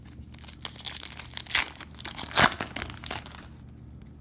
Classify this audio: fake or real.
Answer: real